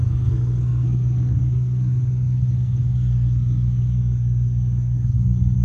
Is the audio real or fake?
fake